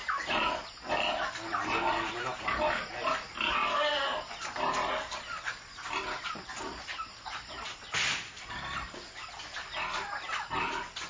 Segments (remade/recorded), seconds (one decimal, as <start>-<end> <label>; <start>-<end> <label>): 0.0-11.1 recorded